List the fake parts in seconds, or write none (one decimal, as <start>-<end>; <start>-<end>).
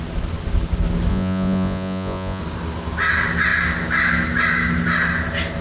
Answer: 1.1-2.4